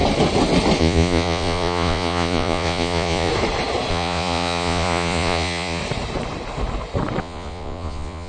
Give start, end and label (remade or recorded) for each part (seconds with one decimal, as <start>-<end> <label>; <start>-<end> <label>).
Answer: 0.0-0.8 recorded; 0.8-3.3 remade; 3.3-3.9 recorded; 3.9-5.8 remade; 5.8-7.2 recorded; 7.2-8.3 remade